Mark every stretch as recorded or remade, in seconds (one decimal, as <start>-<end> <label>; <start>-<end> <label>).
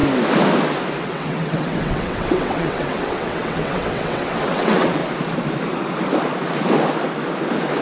0.0-1.0 recorded; 1.0-5.0 remade; 5.0-7.8 recorded